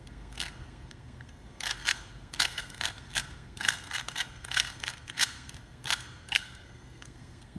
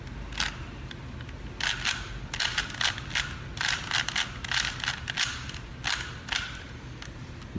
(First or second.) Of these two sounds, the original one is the second